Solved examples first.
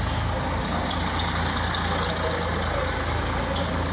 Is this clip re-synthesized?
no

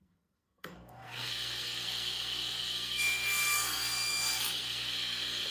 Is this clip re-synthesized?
yes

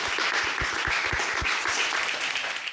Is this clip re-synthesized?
no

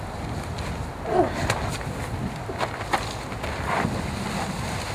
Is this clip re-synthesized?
no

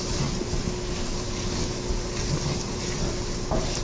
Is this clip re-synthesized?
no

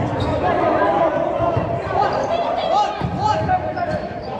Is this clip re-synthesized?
yes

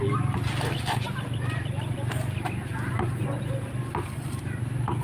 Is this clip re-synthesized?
no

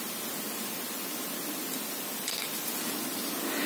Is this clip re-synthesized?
no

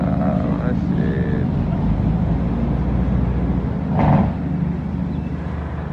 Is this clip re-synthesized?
no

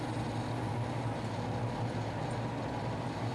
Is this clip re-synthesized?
no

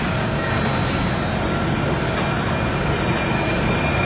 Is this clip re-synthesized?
no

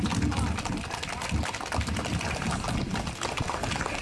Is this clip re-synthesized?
no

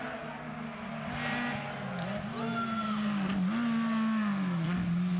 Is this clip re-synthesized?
no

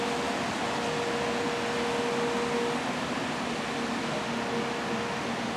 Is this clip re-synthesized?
no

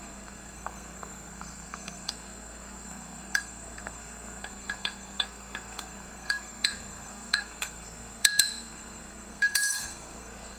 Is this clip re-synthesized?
yes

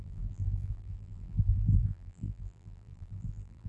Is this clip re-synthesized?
yes